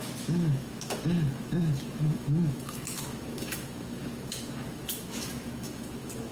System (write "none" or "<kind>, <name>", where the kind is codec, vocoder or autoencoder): autoencoder, DAC-VAE